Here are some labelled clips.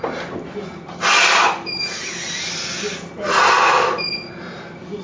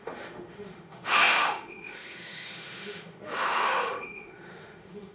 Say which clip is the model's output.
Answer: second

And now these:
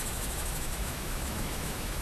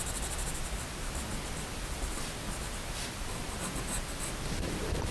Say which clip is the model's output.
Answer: first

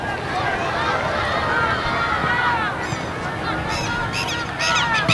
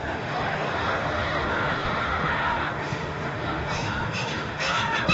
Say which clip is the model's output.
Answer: second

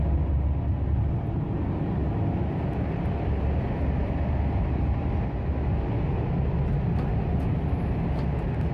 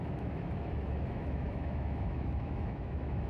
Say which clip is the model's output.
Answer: second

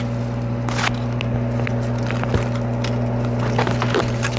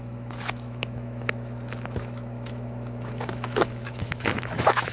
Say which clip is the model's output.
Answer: second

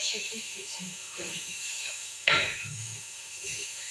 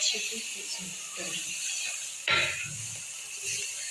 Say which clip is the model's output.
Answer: first